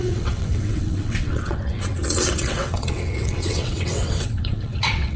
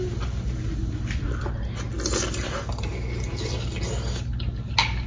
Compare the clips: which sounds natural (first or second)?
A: second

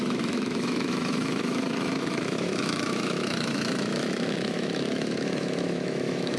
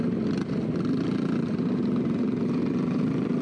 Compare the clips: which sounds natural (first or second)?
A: second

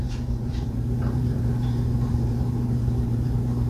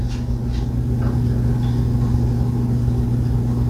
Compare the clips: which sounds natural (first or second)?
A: second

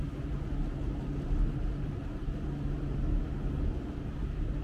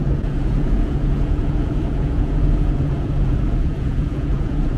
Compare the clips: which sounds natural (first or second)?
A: first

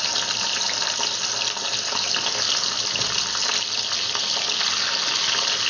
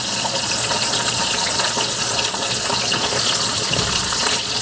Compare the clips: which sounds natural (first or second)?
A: first